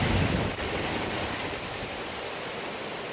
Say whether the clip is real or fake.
real